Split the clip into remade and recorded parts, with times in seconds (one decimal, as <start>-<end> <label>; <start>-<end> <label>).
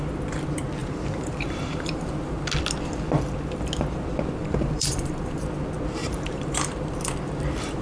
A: 0.0-0.8 recorded; 0.8-2.1 remade; 2.1-4.4 recorded; 4.4-5.4 remade; 5.4-6.0 recorded; 6.0-6.8 remade; 6.8-7.8 recorded